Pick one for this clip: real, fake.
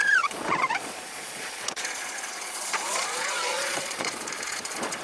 fake